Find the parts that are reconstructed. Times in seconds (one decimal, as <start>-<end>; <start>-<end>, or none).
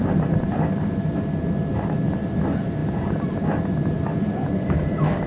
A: 2.8-5.3